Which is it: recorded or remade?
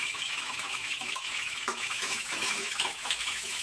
remade